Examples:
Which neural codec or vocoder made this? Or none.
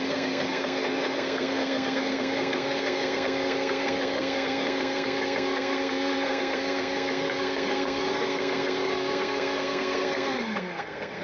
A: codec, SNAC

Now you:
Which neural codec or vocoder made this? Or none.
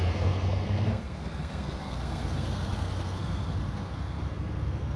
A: codec, SNAC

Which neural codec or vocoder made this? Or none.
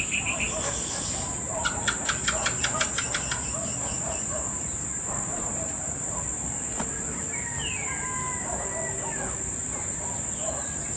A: none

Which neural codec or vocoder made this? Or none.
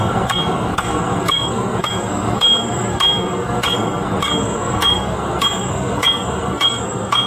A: codec, SNAC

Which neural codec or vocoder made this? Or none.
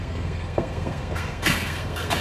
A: codec, SNAC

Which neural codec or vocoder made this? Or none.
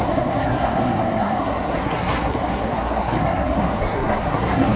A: codec, SNAC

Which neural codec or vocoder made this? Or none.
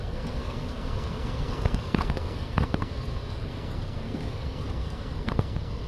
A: codec, SNAC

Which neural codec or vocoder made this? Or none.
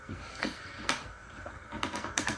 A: codec, SNAC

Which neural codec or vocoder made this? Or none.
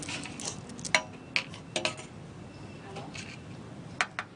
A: none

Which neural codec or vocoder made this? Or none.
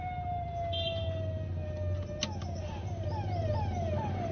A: none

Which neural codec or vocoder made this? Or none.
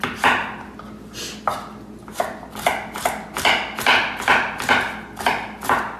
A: none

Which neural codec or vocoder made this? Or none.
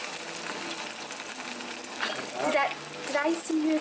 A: none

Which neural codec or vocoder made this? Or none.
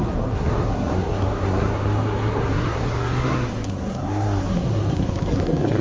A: codec, SNAC